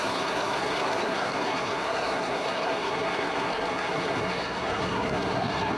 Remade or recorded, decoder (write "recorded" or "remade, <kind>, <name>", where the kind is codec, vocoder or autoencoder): remade, codec, SNAC